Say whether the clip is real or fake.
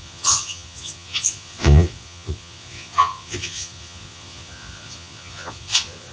fake